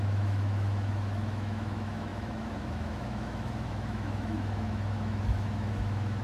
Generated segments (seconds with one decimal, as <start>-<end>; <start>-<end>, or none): 0.0-6.2